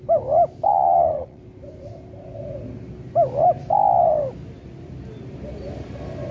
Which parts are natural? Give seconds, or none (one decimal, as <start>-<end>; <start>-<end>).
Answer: 0.0-0.7; 1.4-6.3